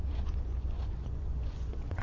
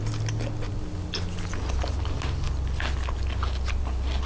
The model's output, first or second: first